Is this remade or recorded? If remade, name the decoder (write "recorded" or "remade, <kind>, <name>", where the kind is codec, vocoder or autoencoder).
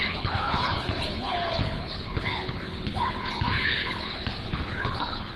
remade, codec, HILCodec